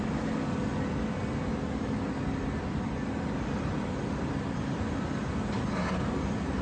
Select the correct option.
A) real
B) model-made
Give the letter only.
A